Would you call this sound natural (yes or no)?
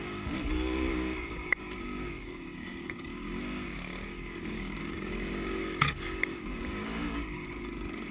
no